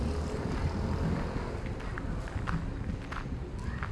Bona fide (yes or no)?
yes